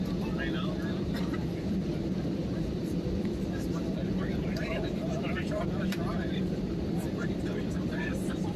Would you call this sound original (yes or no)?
no